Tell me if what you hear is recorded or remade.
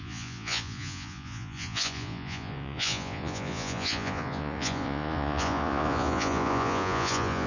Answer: remade